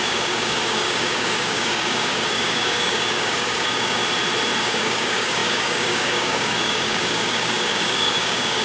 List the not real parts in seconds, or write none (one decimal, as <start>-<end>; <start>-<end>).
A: 0.0-4.0; 4.6-8.6

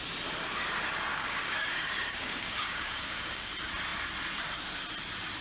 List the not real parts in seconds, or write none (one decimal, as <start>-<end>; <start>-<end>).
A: 1.1-3.5

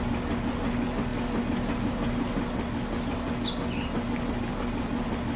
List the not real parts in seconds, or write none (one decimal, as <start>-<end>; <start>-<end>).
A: none

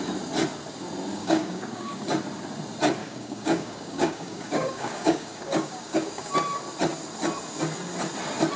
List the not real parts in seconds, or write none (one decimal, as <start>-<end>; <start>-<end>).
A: 1.1-2.1; 3.0-6.3